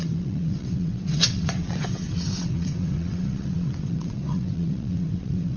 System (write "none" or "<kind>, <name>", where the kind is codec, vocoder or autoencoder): vocoder, WaveNeXt